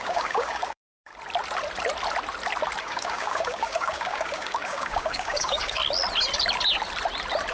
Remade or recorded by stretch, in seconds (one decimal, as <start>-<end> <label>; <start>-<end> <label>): 0.0-1.1 remade; 1.1-2.8 recorded; 2.8-5.8 remade; 5.8-7.5 recorded